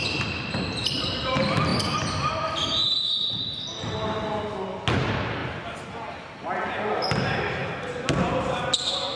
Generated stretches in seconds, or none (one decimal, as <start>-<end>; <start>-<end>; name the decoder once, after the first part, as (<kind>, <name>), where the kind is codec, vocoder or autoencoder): none